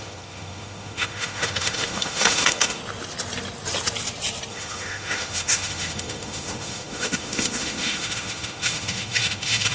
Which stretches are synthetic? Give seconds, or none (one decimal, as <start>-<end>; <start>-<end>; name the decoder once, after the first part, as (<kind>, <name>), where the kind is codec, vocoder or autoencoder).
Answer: 0.0-2.8 (autoencoder, DAC-VAE); 4.5-9.7